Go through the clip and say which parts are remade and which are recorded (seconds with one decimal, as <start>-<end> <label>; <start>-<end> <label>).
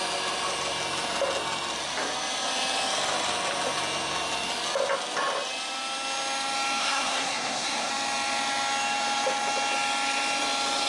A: 0.0-6.8 recorded; 6.8-7.9 remade; 7.9-10.9 recorded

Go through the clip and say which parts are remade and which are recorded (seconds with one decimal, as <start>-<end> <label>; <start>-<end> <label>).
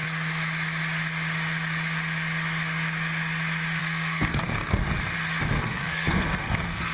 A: 0.0-3.8 recorded; 3.8-4.8 remade; 4.8-5.6 recorded; 5.6-6.9 remade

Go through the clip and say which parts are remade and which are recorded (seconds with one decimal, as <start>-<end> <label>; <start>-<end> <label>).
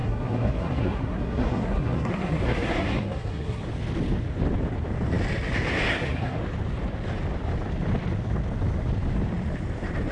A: 0.0-3.6 remade; 3.6-5.9 recorded; 5.9-6.4 remade; 6.4-10.1 recorded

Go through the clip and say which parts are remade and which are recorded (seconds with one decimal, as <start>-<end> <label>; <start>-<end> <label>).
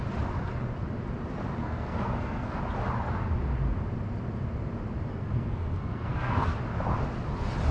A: 0.0-1.6 recorded; 1.6-2.6 remade; 2.6-5.1 recorded; 5.1-6.6 remade; 6.6-7.7 recorded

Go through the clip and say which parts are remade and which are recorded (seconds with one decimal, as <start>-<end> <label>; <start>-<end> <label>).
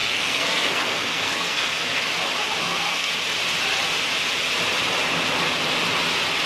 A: 0.0-2.0 remade; 2.0-2.6 recorded; 2.6-3.1 remade; 3.1-6.5 recorded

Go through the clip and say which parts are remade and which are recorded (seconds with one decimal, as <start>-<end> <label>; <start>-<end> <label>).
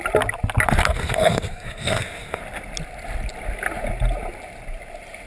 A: 0.0-0.8 recorded; 0.8-2.4 remade; 2.4-5.3 recorded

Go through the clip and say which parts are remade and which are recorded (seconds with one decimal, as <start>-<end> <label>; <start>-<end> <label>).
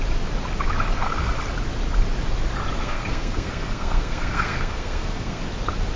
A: 0.0-2.8 recorded; 2.8-5.4 remade; 5.4-6.0 recorded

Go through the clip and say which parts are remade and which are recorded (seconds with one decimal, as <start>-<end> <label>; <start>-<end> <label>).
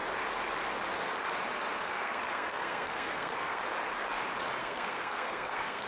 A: 0.0-1.6 recorded; 1.6-3.6 remade; 3.6-4.6 recorded; 4.6-5.9 remade